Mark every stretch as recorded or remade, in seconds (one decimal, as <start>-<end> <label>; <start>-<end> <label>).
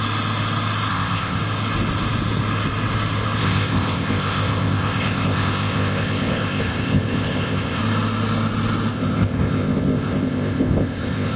0.0-0.9 recorded; 0.9-1.4 remade; 1.4-3.4 recorded; 3.4-7.8 remade; 7.8-8.9 recorded; 8.9-11.4 remade